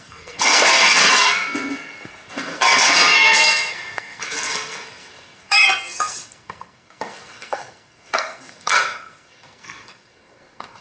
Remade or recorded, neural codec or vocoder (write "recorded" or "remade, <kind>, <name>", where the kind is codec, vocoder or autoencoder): remade, codec, SNAC